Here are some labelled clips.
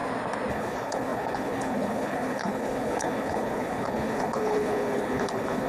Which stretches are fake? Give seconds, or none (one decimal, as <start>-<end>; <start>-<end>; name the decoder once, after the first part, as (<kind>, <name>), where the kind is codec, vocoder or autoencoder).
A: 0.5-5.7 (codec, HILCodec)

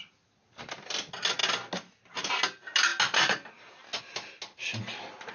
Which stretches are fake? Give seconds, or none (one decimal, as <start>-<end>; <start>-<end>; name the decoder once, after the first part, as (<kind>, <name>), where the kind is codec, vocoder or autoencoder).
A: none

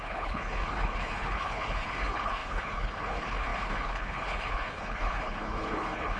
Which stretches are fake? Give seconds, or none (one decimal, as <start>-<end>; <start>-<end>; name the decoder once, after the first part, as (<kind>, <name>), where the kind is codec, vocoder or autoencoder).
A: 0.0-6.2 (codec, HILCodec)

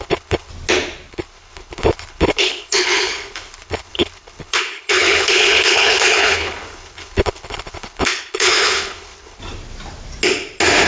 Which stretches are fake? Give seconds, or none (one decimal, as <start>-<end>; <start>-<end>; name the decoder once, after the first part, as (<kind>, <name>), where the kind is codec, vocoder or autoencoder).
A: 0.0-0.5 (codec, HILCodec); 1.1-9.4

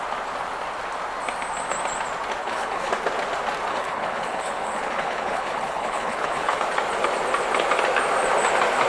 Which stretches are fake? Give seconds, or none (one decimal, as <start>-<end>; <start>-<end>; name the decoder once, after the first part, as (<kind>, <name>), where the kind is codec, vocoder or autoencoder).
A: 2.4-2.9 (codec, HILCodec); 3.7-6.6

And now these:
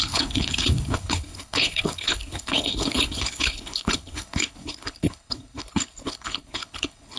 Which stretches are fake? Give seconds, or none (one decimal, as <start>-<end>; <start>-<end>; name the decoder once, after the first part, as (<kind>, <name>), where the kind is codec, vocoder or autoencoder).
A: 0.0-7.2 (codec, HILCodec)